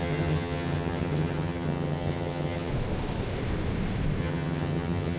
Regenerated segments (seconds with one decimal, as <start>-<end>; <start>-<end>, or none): 0.0-2.7; 4.2-5.2

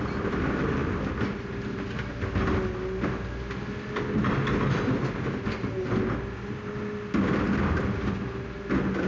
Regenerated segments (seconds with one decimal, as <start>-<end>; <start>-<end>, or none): none

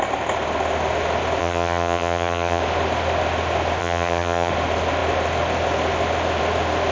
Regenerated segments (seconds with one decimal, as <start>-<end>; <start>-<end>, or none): 1.4-2.6; 3.8-4.5